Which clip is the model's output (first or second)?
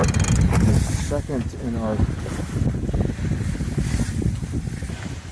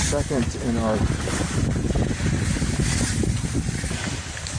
second